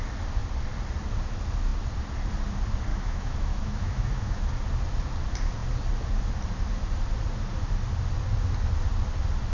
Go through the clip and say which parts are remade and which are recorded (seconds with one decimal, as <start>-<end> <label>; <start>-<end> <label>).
0.0-2.9 recorded; 2.9-4.4 remade; 4.4-9.5 recorded

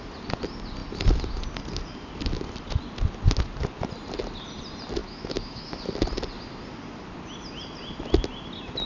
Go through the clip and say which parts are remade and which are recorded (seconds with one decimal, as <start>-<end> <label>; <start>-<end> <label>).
0.0-5.0 recorded; 5.0-5.7 remade; 5.7-8.9 recorded

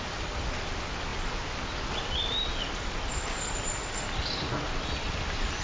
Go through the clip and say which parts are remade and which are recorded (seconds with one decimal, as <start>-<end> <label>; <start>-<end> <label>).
0.0-5.6 recorded

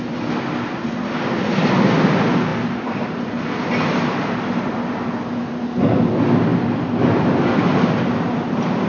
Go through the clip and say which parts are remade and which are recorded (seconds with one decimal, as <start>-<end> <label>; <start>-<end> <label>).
0.0-8.9 recorded

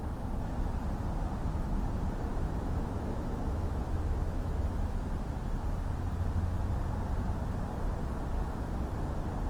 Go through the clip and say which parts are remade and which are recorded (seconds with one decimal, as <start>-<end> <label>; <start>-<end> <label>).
0.0-2.3 recorded; 2.3-5.0 remade; 5.0-9.5 recorded

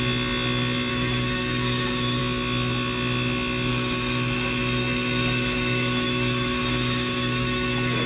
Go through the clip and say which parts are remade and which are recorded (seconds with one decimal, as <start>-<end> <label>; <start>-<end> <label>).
0.0-0.9 recorded; 0.9-2.2 remade; 2.2-3.7 recorded; 3.7-8.1 remade